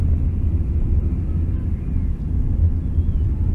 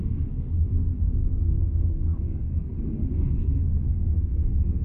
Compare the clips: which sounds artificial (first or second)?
second